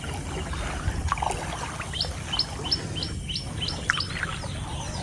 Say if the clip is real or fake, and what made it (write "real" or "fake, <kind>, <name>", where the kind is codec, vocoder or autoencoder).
real